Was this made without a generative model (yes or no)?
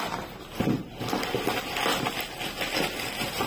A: yes